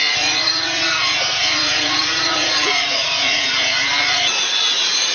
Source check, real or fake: fake